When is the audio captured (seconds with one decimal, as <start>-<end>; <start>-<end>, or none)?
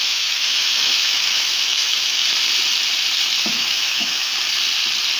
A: 2.2-3.4; 4.3-5.2